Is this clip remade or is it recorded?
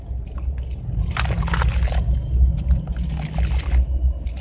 recorded